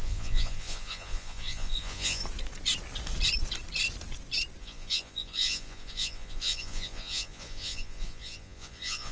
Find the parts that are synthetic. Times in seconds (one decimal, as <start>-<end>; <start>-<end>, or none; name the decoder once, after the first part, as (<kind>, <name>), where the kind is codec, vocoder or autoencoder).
0.0-2.2 (vocoder, Vocos); 4.6-9.1